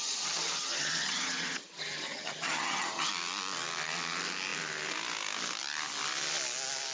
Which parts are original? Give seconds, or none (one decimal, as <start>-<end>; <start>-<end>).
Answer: 3.1-6.9